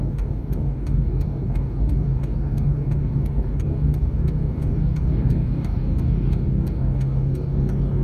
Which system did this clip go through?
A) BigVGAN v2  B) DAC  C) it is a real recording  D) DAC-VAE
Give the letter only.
B